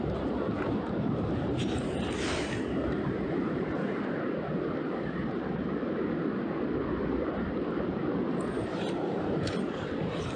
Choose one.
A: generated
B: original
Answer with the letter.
A